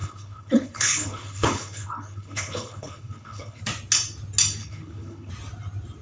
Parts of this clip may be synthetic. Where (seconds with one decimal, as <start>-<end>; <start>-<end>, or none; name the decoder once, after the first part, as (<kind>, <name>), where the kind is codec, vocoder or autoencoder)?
0.0-3.6 (codec, HILCodec); 4.6-5.3